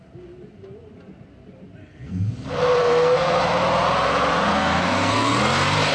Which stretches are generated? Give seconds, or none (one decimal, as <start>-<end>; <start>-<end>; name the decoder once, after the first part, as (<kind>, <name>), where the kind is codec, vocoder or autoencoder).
1.8-2.3 (codec, SNAC); 2.8-3.4; 4.5-5.4